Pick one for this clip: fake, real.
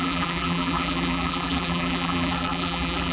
fake